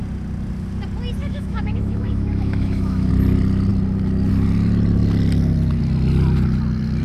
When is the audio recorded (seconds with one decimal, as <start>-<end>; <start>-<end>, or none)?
0.0-1.2; 3.1-7.0